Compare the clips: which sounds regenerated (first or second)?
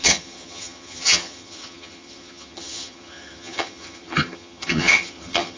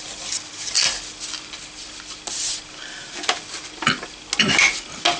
first